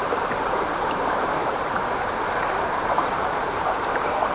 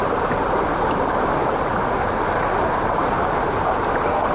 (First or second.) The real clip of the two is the second